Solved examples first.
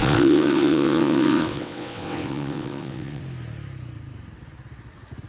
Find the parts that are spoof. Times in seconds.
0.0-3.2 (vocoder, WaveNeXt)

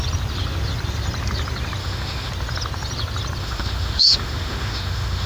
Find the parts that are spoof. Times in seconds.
1.8-2.3 (autoencoder, DAC-VAE); 3.4-5.3

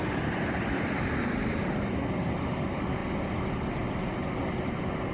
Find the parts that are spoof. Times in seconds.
none

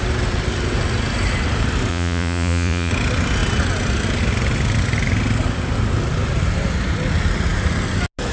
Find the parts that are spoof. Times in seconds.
1.9-2.9 (vocoder, Vocos)

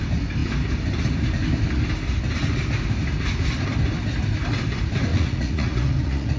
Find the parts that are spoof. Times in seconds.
5.1-6.4 (vocoder, Vocos)

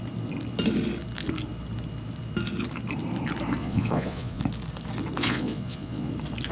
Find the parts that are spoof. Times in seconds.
3.6-4.4 (vocoder, Vocos); 5.2-6.1

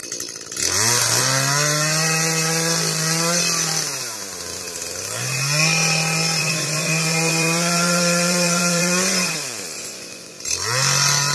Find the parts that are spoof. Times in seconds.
6.4-10.4 (vocoder, Vocos)

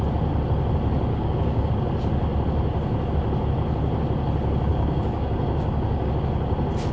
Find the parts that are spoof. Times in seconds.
1.1-1.7 (codec, DAC); 4.7-6.1